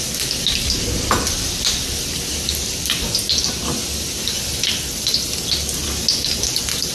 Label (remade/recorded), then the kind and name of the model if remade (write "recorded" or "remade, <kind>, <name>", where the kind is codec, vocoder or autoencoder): recorded